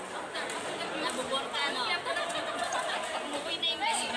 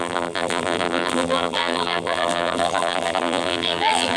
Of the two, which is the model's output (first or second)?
second